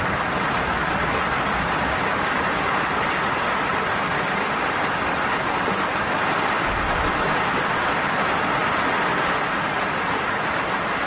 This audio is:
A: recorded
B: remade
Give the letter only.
A